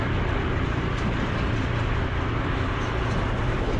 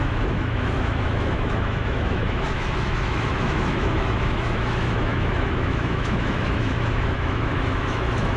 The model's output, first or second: second